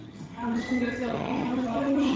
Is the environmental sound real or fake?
fake